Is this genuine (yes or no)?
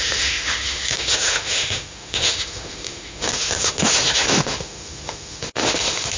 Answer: no